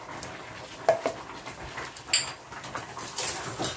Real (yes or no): yes